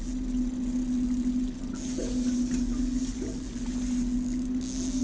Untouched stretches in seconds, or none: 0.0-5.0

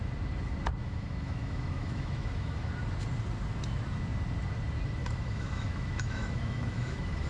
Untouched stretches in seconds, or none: 0.0-0.8; 2.7-5.0